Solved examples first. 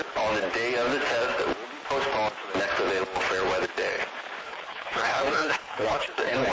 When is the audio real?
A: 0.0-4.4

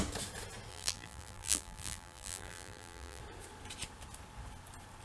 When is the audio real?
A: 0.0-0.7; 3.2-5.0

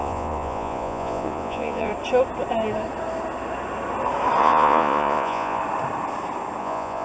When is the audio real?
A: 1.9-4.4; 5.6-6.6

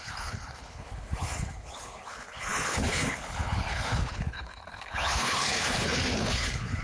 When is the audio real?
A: none